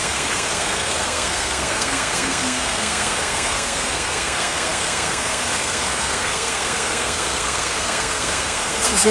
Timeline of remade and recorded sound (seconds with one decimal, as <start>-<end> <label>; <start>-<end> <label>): 0.0-9.1 remade